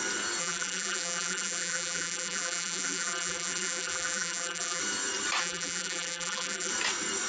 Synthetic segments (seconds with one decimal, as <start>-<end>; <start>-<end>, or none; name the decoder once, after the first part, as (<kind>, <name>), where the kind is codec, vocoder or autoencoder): 0.4-4.8 (vocoder, BigVGAN v2); 5.4-6.7